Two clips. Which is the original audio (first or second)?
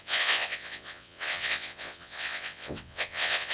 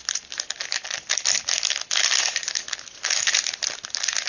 second